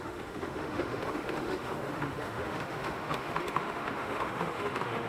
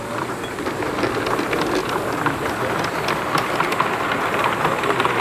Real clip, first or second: second